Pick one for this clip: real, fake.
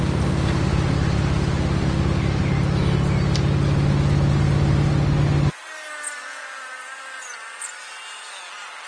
real